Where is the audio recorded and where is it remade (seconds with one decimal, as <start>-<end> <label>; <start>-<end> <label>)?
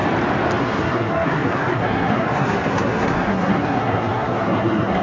0.0-0.6 recorded; 0.6-5.0 remade